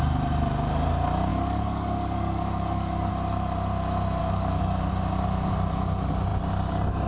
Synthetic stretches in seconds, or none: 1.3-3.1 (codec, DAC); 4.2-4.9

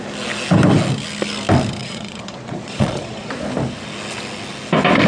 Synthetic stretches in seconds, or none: 1.8-3.3 (vocoder, Vocos)

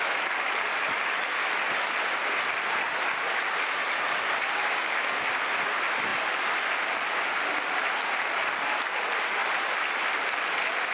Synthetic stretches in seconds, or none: none

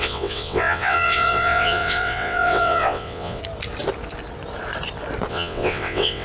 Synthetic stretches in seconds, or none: 0.0-3.4 (vocoder, WaveNeXt); 5.3-6.2